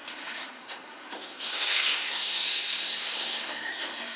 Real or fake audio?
fake